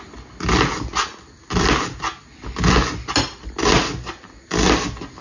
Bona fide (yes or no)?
yes